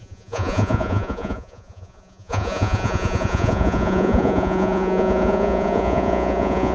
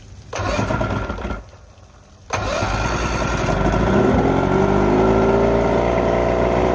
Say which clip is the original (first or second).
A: second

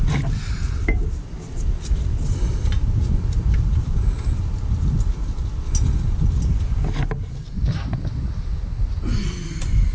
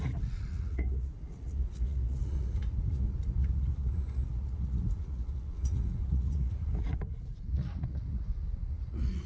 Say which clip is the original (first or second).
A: first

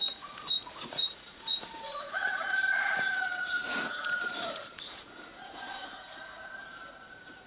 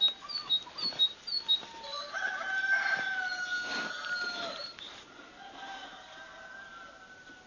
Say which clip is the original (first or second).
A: second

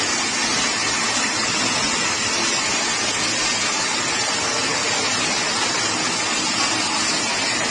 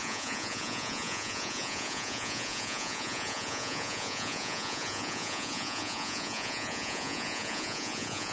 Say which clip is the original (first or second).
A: first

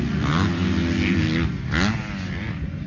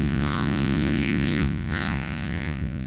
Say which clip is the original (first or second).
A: first